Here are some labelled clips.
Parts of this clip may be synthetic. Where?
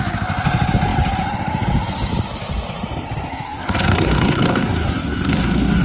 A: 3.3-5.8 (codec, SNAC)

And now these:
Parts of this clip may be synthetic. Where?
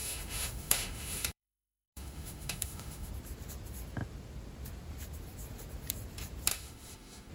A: 0.0-3.1 (autoencoder, DAC-VAE); 6.5-7.3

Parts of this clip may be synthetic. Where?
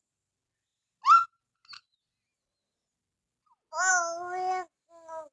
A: none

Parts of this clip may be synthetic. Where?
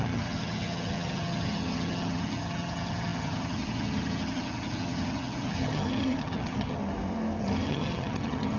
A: 0.0-6.8 (vocoder, HiFi-GAN); 7.4-8.6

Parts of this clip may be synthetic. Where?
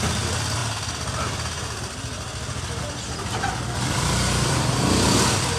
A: none